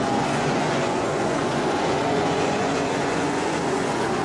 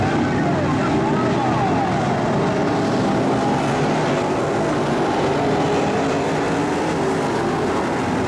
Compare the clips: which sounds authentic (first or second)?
second